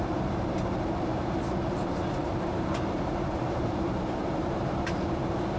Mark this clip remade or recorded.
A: remade